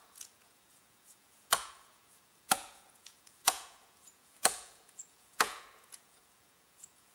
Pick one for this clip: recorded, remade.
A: remade